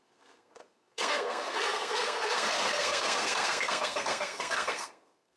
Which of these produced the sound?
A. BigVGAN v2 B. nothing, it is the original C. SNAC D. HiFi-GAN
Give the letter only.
C